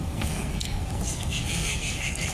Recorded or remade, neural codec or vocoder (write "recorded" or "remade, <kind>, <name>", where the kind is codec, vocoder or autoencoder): remade, codec, SNAC